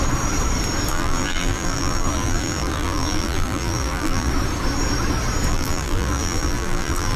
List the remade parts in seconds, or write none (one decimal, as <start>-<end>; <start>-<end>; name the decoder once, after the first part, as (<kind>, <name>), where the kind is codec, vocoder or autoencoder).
0.9-4.3 (vocoder, BigVGAN v2); 5.5-7.2